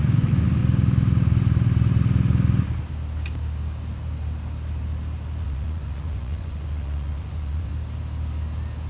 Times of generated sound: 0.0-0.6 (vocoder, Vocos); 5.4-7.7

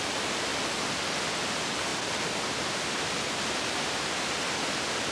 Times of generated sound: none

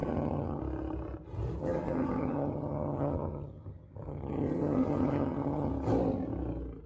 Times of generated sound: 0.0-0.6 (vocoder, HiFi-GAN); 1.6-5.7

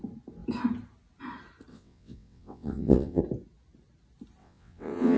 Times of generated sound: 1.7-3.2 (vocoder, WaveNeXt); 4.4-5.2

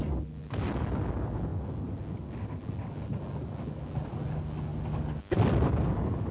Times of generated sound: 4.7-6.3 (vocoder, BigVGAN v2)